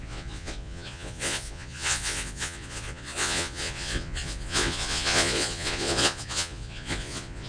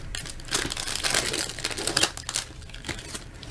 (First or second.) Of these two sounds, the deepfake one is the first